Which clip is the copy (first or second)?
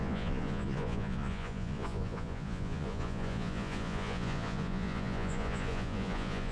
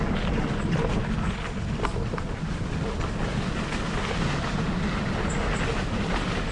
first